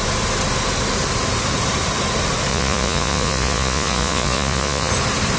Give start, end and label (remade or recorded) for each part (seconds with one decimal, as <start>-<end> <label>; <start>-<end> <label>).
0.0-2.5 recorded; 2.5-4.9 remade; 4.9-5.4 recorded